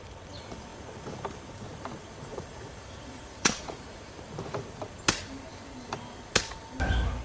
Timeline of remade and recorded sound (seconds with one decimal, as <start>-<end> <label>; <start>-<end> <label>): 0.0-2.3 recorded; 2.3-4.0 remade; 4.0-7.2 recorded